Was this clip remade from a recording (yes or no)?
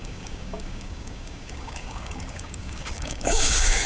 yes